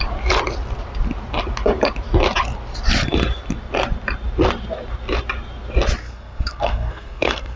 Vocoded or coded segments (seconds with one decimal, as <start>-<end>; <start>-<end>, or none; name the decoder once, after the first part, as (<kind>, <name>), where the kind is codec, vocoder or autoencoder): 6.0-7.6 (codec, SNAC)